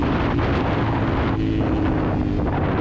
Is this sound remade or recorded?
recorded